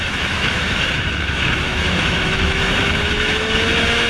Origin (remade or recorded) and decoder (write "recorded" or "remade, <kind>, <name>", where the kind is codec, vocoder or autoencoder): remade, autoencoder, DAC-VAE